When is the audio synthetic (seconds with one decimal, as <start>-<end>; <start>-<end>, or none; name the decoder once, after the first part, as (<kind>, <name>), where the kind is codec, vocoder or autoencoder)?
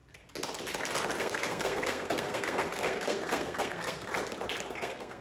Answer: 1.2-4.1 (codec, SNAC); 4.7-5.2